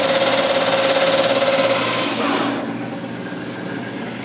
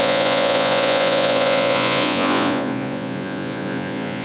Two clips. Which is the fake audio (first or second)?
second